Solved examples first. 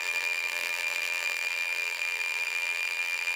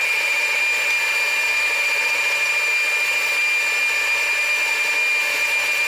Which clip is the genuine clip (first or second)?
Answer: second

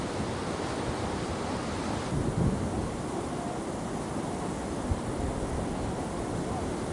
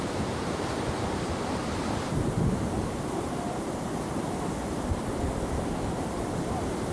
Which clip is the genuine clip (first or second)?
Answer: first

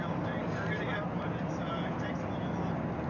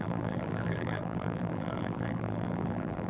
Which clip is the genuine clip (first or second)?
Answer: first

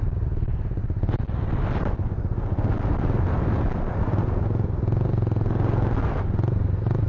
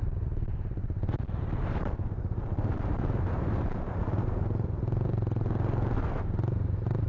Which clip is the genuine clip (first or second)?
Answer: first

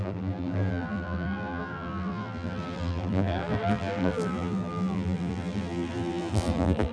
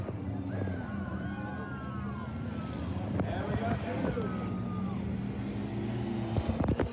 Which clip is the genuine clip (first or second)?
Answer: second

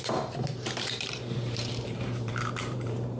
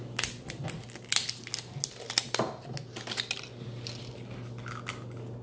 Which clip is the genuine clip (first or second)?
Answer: second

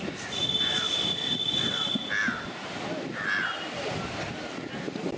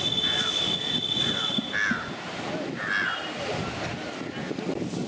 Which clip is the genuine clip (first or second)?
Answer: second